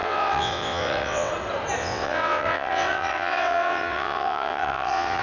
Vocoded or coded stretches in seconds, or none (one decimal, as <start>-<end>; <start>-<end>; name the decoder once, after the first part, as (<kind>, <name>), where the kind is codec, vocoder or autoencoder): 0.0-1.3 (vocoder, WaveNeXt); 1.8-5.2